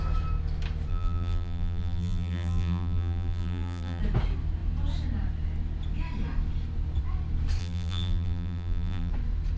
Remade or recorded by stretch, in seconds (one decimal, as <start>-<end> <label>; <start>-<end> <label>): 0.0-0.9 recorded; 0.9-4.0 remade; 4.0-7.6 recorded; 7.6-9.1 remade; 9.1-9.6 recorded